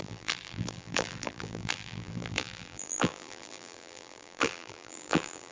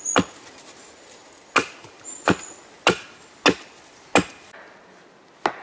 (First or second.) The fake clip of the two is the first